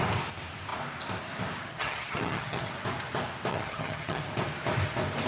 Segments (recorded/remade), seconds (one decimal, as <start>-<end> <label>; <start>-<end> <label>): 0.0-1.7 recorded; 1.7-2.7 remade; 2.7-3.5 recorded; 3.5-4.2 remade; 4.2-5.3 recorded